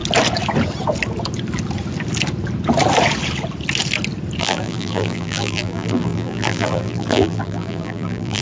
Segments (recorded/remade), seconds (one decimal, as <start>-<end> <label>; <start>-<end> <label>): 0.0-4.4 recorded; 4.4-8.4 remade